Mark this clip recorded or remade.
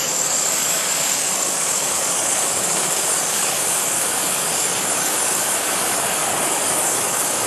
remade